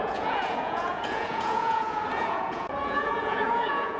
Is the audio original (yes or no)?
no